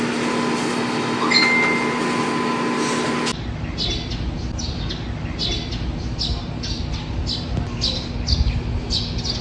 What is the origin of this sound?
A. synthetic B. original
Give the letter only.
B